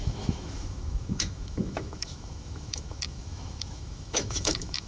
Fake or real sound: fake